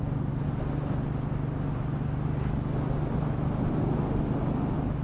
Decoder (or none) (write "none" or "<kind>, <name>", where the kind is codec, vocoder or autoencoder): none